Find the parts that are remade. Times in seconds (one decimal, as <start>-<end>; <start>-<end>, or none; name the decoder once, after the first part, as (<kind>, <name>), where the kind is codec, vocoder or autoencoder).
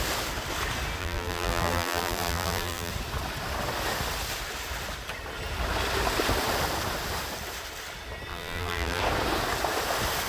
1.0-2.9 (vocoder, BigVGAN v2); 8.3-9.0